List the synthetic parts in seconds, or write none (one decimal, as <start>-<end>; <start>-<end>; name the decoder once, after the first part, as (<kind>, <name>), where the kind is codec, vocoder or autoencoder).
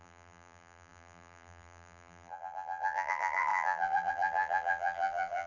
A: 0.0-5.5 (vocoder, BigVGAN v2)